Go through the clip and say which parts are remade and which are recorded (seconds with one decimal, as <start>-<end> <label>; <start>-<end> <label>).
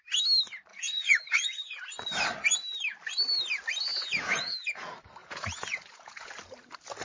0.0-0.7 recorded; 0.7-1.8 remade; 1.8-3.9 recorded; 3.9-4.8 remade; 4.8-5.2 recorded; 5.2-6.3 remade; 6.3-7.0 recorded